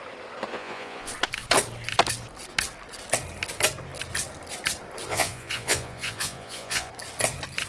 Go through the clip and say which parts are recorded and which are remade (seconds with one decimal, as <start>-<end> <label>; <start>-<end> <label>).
0.0-0.5 recorded; 0.5-1.1 remade; 1.1-5.1 recorded; 5.1-6.9 remade; 6.9-7.7 recorded